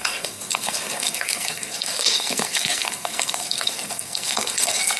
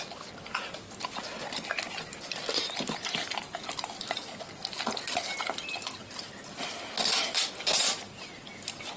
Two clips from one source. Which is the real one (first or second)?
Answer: second